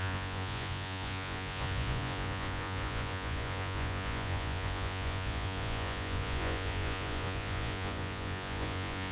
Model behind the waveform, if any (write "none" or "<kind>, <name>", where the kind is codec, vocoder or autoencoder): vocoder, Vocos